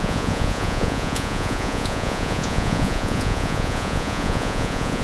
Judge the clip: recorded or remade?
remade